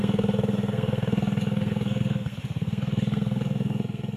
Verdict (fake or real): fake